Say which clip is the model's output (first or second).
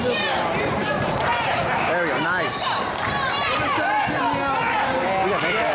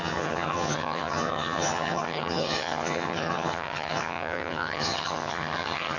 second